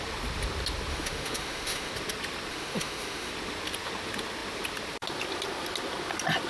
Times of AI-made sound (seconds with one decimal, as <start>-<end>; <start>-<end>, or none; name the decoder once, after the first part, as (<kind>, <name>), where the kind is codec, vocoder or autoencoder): 0.9-1.9 (autoencoder, DAC-VAE); 2.5-3.3